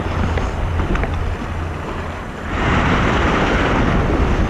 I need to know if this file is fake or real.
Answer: real